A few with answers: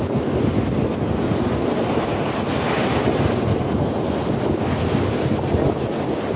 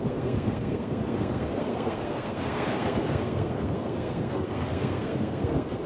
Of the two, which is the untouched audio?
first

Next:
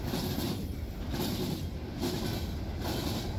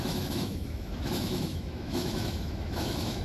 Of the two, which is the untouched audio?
first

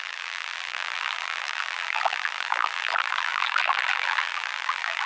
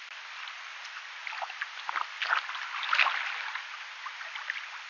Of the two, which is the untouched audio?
second